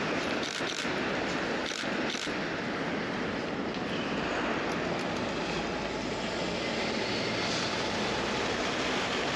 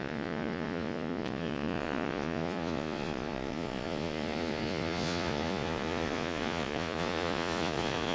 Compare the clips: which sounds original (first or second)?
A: first